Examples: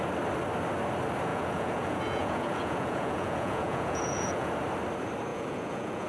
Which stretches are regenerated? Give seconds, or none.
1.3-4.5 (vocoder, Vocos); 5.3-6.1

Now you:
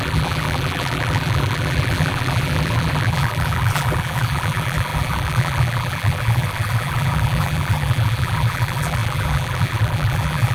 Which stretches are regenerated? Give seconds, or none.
0.0-10.5 (vocoder, BigVGAN v2)